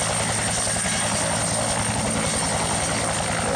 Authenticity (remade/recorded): recorded